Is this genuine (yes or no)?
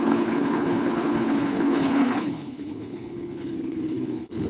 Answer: no